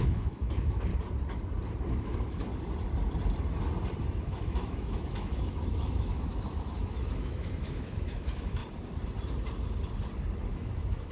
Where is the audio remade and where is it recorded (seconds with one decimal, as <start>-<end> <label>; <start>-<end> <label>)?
0.0-0.9 remade; 0.9-1.9 recorded; 1.9-2.5 remade; 2.5-4.0 recorded; 4.0-8.6 remade; 8.6-10.5 recorded; 10.5-11.1 remade